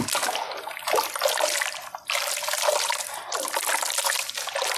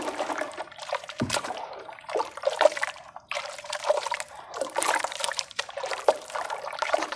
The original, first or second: first